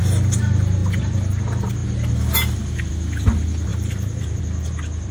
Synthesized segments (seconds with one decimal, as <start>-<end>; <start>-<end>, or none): 3.7-4.4